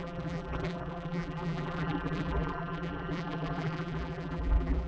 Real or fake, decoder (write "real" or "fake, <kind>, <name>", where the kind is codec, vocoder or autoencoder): fake, vocoder, BigVGAN v2